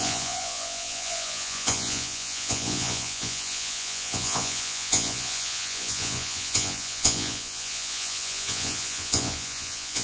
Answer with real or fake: fake